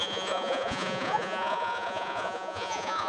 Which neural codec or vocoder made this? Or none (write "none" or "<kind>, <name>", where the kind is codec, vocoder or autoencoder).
vocoder, Vocos